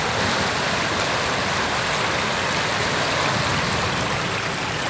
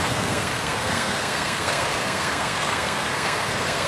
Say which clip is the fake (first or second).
second